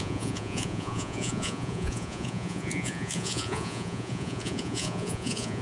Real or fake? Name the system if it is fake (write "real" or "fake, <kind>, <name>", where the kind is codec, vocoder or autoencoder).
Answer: fake, vocoder, Vocos